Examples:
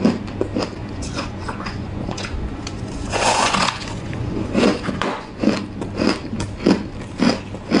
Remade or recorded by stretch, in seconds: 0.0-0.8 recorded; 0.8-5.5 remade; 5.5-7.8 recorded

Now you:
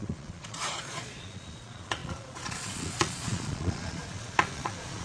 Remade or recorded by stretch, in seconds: 0.0-5.0 remade